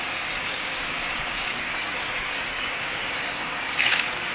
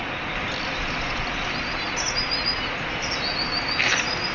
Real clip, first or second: second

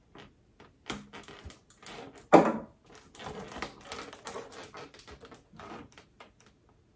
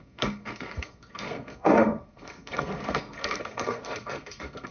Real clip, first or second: first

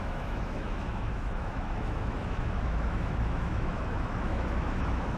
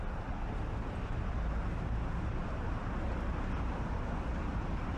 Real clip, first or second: second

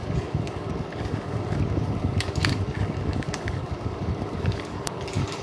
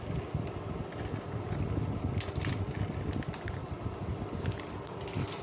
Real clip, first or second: second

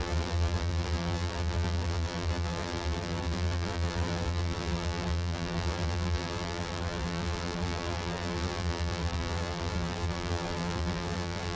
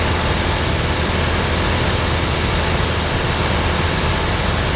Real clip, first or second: second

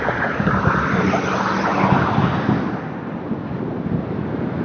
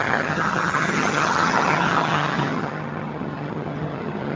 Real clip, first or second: first